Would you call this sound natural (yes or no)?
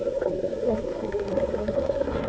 no